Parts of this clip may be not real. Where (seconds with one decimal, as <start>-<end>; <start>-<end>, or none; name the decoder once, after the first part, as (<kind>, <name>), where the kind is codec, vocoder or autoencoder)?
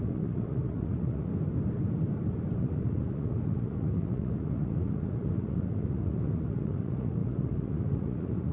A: 0.0-1.3 (vocoder, Vocos); 2.6-8.5